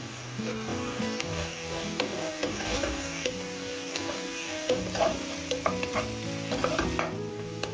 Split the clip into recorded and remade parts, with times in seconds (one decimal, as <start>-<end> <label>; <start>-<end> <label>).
0.0-4.8 remade; 4.8-7.3 recorded; 7.3-7.7 remade